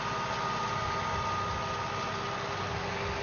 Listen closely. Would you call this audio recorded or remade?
recorded